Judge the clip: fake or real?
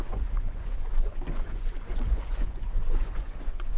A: fake